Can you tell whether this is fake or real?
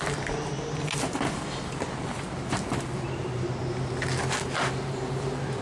real